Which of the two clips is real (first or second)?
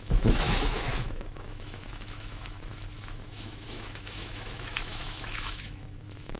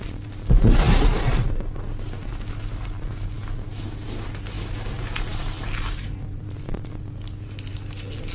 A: second